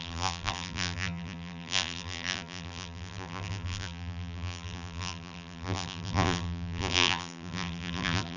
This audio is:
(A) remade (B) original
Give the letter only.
A